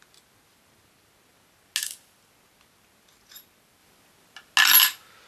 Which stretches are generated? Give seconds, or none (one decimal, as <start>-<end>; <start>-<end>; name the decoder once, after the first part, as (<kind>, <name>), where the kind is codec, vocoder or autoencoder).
none